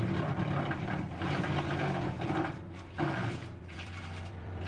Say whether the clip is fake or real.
fake